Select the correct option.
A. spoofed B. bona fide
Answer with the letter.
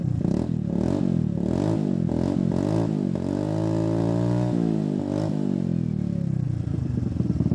B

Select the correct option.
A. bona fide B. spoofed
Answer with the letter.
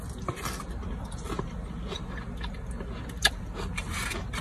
A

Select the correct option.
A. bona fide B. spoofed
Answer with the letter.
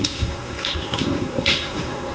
B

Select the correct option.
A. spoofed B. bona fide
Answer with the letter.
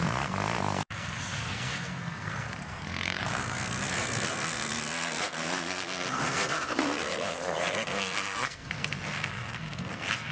A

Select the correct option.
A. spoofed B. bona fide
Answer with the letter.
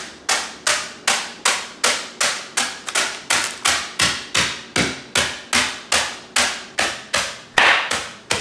B